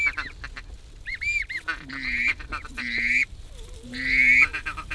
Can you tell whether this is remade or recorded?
recorded